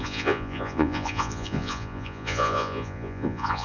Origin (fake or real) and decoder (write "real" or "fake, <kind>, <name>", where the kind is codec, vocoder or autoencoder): fake, vocoder, Vocos